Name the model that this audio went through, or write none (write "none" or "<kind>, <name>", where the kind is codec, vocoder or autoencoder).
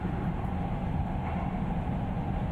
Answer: none